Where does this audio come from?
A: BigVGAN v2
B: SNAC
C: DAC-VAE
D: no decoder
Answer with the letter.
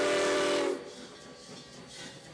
D